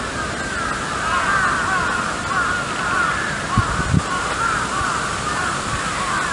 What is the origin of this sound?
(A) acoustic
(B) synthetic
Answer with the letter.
A